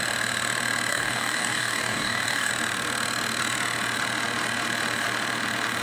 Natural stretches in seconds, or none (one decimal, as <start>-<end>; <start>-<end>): 0.0-0.9; 2.5-5.8